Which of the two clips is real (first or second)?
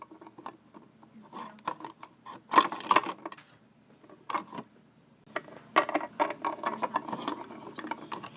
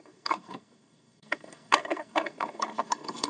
first